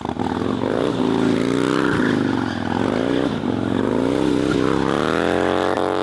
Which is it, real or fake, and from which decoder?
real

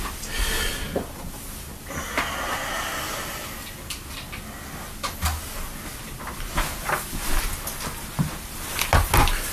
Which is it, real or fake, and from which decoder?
real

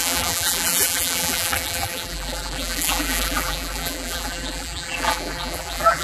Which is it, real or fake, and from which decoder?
fake, vocoder, BigVGAN v2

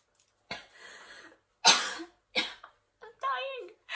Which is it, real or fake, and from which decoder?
real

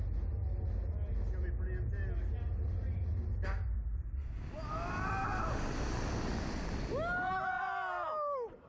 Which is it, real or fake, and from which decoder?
real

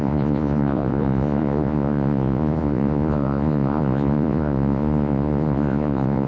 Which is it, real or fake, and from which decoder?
fake, vocoder, Vocos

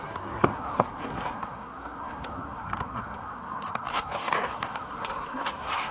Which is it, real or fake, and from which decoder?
fake, codec, SNAC